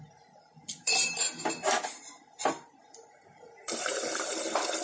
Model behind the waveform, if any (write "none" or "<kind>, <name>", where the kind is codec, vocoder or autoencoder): vocoder, BigVGAN v2